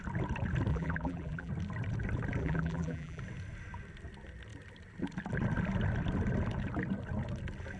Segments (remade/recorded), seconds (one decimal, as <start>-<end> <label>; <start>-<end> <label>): 0.0-0.7 recorded; 0.7-1.5 remade; 1.5-2.4 recorded; 2.4-3.2 remade; 3.2-7.8 recorded